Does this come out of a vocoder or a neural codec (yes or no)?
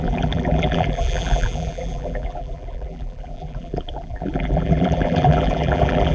yes